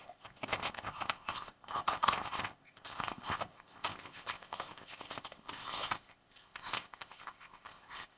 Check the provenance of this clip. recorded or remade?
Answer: remade